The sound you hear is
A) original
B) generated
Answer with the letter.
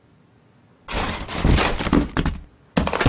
A